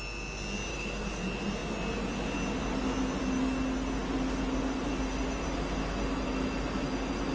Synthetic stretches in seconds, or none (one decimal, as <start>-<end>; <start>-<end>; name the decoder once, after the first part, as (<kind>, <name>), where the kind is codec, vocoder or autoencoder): 0.7-1.2 (codec, DAC)